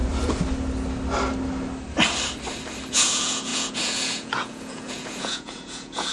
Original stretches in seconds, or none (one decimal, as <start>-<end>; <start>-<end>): 0.0-2.9